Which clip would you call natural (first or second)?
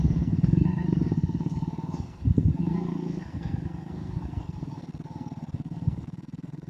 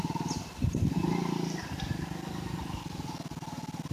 second